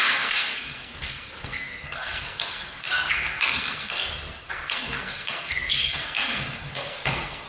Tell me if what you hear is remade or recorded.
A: remade